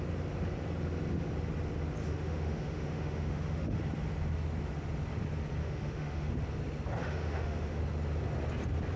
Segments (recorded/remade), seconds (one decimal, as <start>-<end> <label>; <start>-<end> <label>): 0.0-2.0 recorded; 2.0-3.8 remade; 3.8-5.6 recorded; 5.6-6.3 remade; 6.3-7.0 recorded; 7.0-7.8 remade; 7.8-9.0 recorded

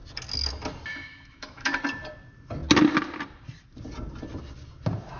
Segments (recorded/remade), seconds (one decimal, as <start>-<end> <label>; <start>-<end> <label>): 0.0-0.9 recorded; 0.9-1.8 remade; 1.8-5.2 recorded

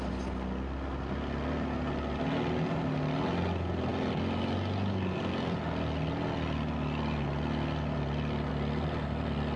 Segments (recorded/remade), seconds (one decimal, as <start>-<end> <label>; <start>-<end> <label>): 0.0-9.6 recorded

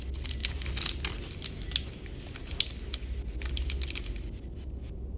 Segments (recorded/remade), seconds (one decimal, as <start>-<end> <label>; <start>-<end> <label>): 0.0-5.2 recorded

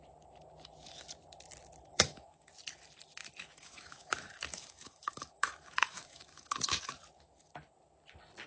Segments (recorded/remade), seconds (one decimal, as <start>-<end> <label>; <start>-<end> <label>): 0.0-1.9 recorded; 1.9-2.5 remade; 2.5-3.2 recorded; 3.2-6.9 remade; 6.9-8.5 recorded

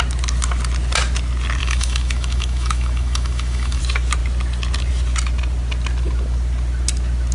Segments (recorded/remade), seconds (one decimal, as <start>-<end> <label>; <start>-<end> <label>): 0.0-1.6 recorded; 1.6-3.8 remade; 3.8-7.3 recorded